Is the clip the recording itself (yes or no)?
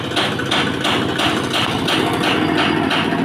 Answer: yes